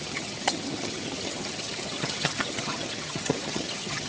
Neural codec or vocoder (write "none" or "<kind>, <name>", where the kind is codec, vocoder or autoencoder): vocoder, HiFi-GAN